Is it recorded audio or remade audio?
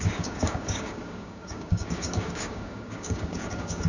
remade